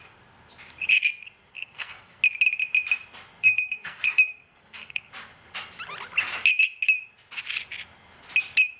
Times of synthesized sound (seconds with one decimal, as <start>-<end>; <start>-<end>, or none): 1.5-2.2; 3.4-5.1